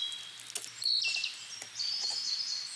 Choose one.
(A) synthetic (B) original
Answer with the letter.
B